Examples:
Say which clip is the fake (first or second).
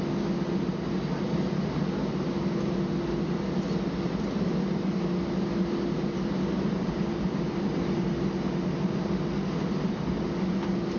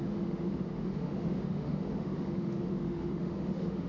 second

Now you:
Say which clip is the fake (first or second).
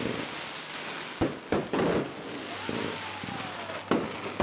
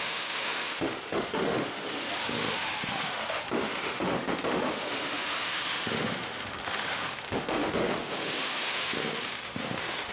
second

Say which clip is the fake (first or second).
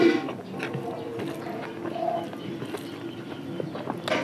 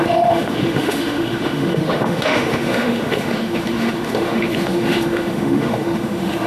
second